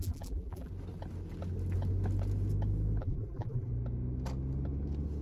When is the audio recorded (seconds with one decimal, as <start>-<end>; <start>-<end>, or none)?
0.7-3.0; 3.7-5.2